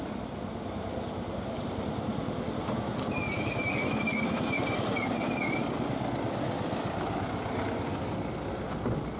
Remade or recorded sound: recorded